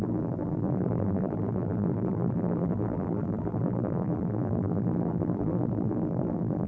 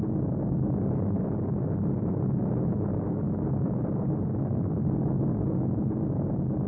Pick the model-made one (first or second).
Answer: first